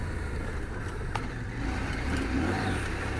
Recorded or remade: remade